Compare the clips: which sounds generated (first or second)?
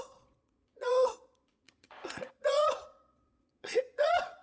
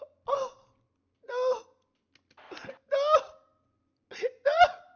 first